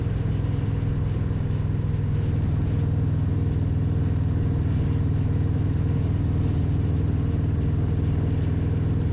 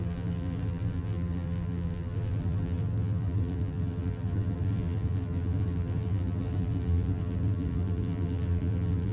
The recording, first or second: first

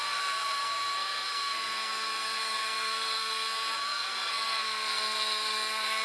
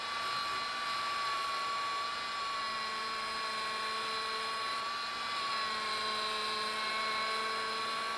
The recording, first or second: second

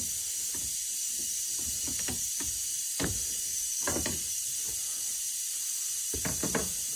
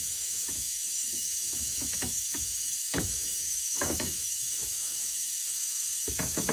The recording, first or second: first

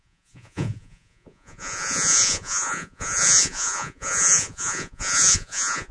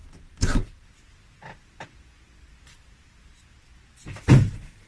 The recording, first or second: second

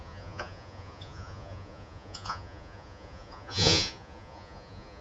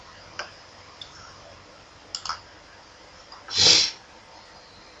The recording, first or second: second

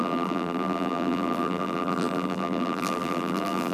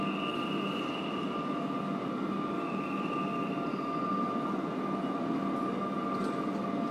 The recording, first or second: second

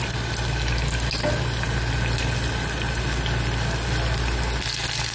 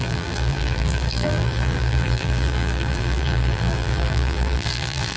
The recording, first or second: first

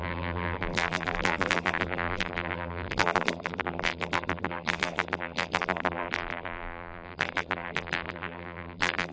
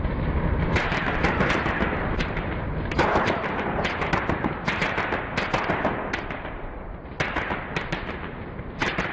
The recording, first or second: second